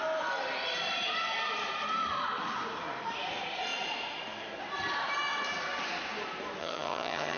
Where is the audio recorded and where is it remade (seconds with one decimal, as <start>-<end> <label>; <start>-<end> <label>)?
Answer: 0.0-6.6 recorded; 6.6-7.4 remade